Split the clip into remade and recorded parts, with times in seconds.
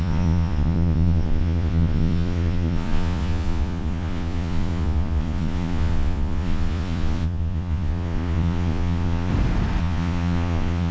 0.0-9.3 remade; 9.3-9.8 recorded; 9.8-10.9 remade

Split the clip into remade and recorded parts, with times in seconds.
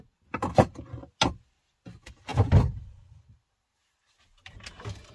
0.0-5.1 recorded